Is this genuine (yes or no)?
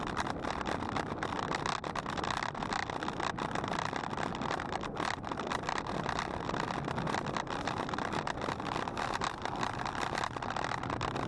yes